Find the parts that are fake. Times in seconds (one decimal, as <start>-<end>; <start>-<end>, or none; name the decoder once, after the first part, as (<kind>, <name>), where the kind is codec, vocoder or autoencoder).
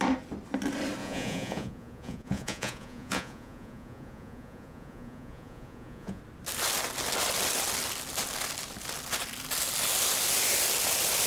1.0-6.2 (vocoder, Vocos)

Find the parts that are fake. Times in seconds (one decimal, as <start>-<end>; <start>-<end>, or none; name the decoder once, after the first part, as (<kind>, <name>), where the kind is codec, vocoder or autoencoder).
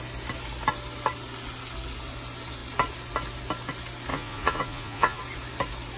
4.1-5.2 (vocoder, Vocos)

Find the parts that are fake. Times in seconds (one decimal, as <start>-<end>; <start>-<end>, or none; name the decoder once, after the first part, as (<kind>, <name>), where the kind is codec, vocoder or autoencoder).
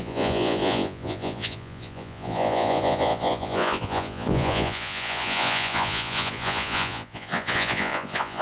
0.0-8.4 (vocoder, Vocos)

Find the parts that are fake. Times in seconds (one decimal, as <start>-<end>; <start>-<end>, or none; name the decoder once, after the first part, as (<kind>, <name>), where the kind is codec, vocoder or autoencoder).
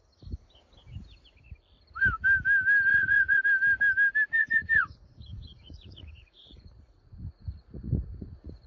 2.9-3.4 (vocoder, Vocos); 4.4-8.7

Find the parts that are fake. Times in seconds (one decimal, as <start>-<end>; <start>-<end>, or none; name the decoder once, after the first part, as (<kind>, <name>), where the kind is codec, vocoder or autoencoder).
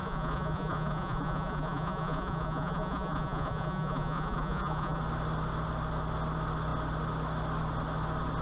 0.0-5.0 (vocoder, Vocos)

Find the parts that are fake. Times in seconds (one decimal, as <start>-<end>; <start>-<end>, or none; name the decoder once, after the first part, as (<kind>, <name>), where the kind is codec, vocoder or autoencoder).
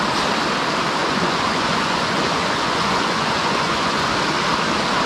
1.0-4.1 (vocoder, Vocos)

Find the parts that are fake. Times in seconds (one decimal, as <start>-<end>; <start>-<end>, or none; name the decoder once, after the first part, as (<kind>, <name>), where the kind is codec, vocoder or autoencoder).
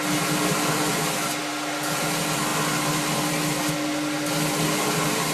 none